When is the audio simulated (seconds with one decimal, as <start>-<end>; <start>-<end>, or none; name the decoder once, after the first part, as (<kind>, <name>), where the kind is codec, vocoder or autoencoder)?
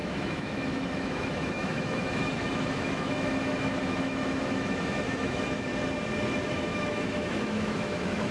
0.0-5.7 (autoencoder, DAC-VAE); 6.5-8.3